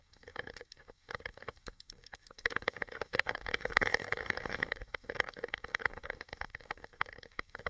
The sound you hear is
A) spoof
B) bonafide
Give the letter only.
A